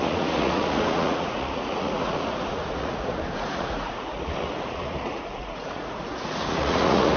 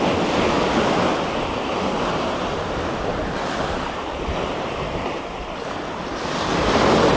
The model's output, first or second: first